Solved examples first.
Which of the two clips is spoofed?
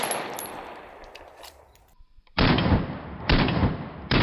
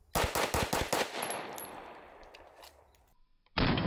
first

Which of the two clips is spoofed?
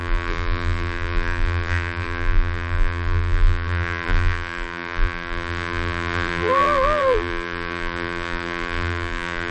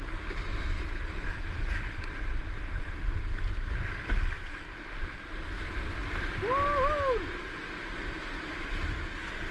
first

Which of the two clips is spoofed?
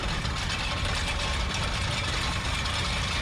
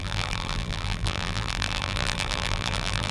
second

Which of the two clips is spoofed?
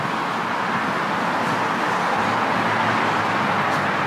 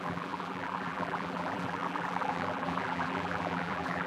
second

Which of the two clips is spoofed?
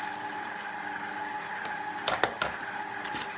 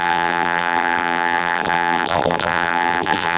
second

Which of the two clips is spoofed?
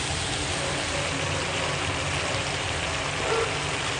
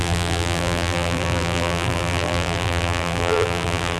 second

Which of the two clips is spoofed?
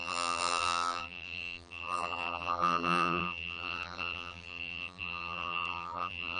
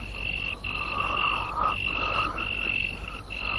first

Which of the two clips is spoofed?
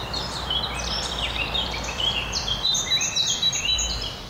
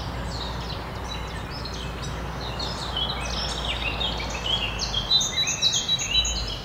first